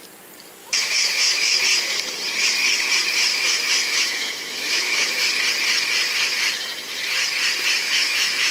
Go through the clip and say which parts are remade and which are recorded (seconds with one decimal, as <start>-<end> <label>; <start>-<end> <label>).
0.0-0.6 recorded; 0.6-1.6 remade; 1.6-3.3 recorded; 3.3-5.3 remade; 5.3-7.8 recorded; 7.8-8.5 remade